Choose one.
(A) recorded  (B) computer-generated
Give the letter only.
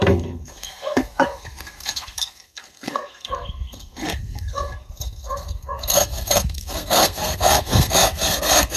B